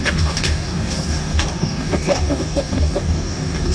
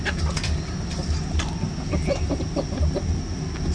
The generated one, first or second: first